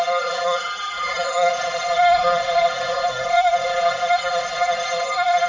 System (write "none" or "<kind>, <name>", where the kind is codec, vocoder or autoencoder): codec, SNAC